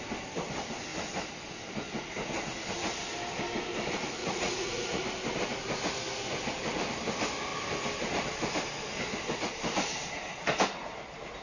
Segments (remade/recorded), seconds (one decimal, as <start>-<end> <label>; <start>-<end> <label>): 0.0-4.2 recorded; 4.2-5.0 remade; 5.0-11.4 recorded